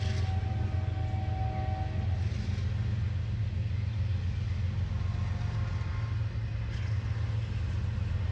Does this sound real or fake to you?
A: real